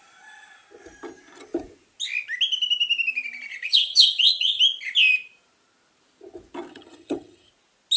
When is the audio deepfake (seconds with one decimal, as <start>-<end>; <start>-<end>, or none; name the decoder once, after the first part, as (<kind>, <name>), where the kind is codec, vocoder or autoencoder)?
3.5-4.6 (vocoder, HiFi-GAN); 6.7-7.5